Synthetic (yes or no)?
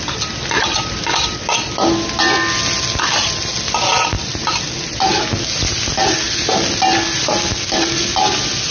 no